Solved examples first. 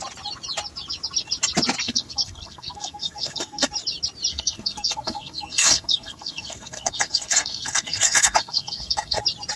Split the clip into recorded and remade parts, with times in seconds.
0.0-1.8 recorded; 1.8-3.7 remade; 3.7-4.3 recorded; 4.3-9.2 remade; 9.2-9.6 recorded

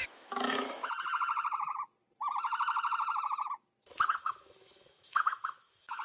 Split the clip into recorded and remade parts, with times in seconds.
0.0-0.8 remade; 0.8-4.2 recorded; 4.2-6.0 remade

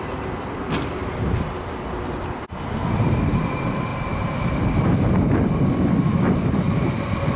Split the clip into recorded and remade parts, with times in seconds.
0.0-7.4 recorded